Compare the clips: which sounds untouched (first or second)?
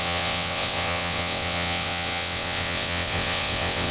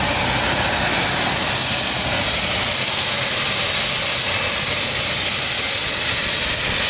second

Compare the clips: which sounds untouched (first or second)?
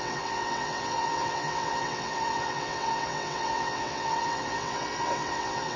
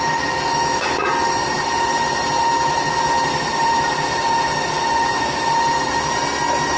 second